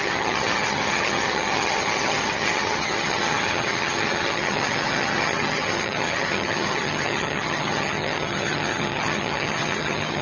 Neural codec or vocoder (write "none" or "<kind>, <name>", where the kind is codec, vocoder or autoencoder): vocoder, HiFi-GAN